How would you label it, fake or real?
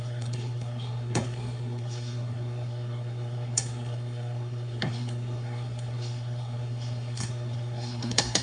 fake